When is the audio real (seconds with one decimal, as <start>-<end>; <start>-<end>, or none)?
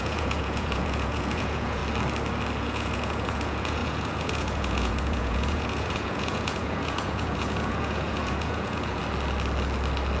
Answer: 1.8-2.6; 9.0-10.2